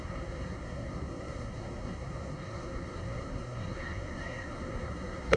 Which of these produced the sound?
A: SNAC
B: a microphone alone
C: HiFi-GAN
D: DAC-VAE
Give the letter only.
A